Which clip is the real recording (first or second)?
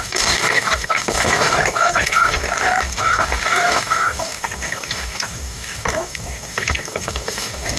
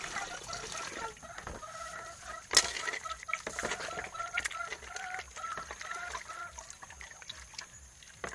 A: second